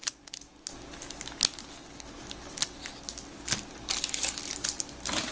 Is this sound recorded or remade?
recorded